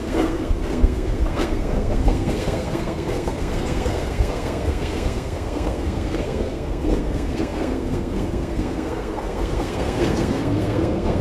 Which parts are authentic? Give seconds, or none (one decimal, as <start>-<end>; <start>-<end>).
none